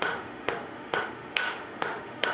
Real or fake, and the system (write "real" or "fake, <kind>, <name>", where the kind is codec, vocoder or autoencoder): fake, autoencoder, DAC-VAE